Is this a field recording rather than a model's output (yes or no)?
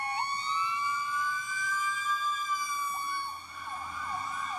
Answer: yes